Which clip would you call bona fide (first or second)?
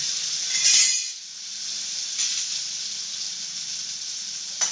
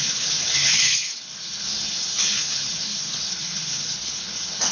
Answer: first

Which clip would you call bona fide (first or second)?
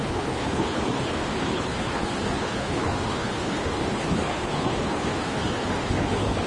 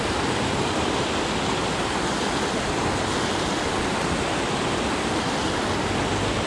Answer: second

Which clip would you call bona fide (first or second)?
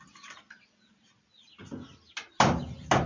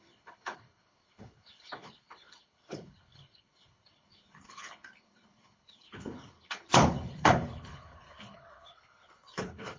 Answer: first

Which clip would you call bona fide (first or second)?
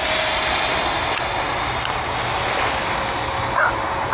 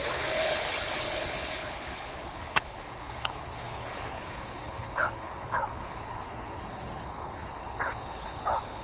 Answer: first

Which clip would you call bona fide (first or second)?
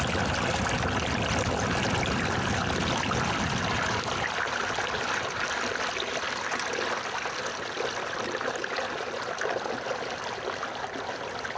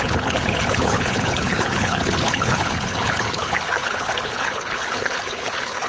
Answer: first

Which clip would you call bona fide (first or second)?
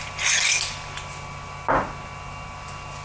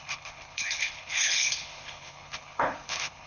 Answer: first